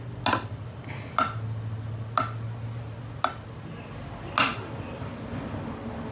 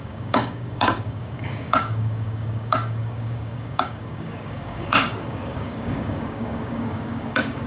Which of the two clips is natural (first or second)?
first